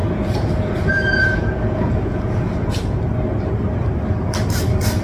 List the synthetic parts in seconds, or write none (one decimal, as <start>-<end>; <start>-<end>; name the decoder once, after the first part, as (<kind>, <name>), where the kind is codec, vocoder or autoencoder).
0.0-3.0 (vocoder, Vocos)